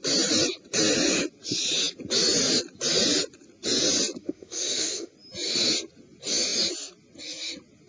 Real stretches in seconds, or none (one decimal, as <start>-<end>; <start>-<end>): 0.0-4.2; 5.1-7.9